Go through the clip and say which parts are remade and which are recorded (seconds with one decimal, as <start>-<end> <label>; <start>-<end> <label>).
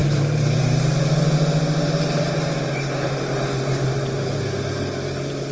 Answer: 0.0-5.5 recorded